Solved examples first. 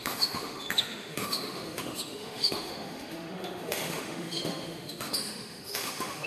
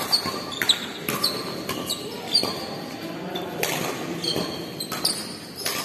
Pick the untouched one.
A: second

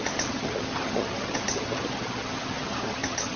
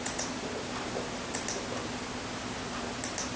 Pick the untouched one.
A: second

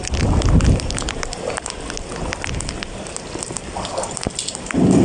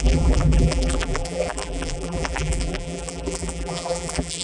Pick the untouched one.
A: first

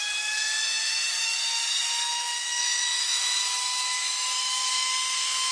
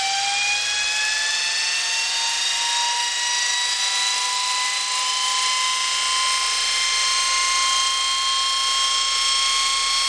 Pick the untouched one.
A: second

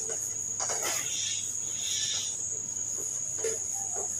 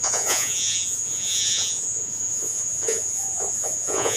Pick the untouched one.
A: first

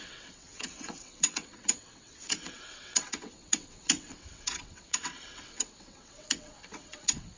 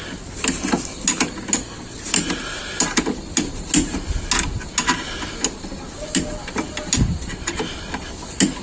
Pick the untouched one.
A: second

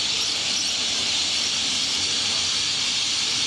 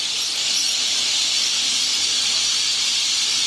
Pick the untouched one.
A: first